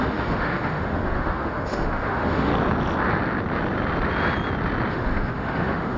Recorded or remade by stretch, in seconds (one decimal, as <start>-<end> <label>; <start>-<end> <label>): 0.0-2.5 remade; 2.5-4.9 recorded; 4.9-6.0 remade